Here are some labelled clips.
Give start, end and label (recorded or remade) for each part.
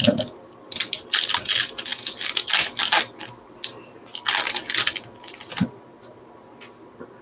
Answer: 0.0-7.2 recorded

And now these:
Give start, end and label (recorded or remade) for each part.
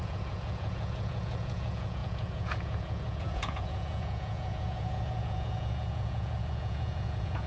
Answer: 0.0-7.5 remade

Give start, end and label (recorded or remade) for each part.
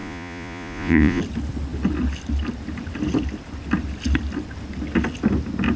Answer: 0.0-1.2 remade; 1.2-5.8 recorded